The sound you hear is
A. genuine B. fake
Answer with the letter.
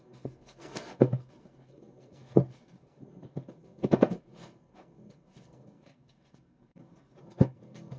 B